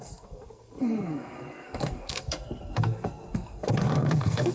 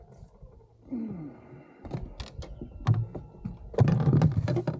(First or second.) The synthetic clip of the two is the first